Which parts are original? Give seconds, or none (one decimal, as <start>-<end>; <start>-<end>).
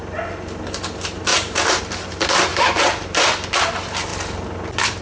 0.0-1.3; 1.8-2.5; 3.2-5.0